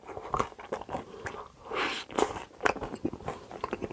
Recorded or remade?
remade